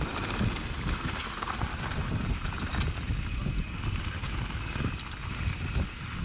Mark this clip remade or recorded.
recorded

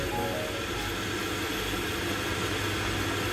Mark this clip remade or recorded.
recorded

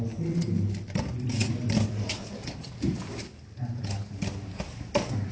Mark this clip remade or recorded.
recorded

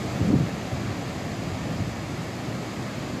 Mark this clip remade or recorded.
recorded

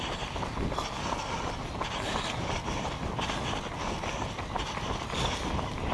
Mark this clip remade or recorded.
recorded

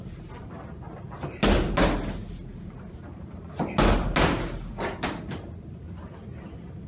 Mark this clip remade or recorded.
recorded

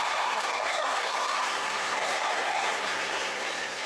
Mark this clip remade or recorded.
remade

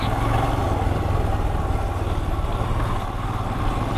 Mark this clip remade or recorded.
recorded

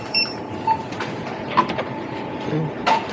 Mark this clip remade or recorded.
remade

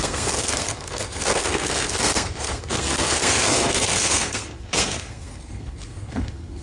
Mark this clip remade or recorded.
remade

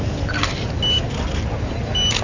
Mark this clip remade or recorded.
recorded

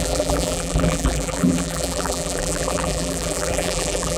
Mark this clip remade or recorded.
remade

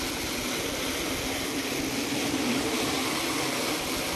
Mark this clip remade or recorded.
recorded